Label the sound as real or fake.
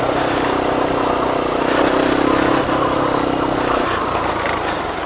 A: real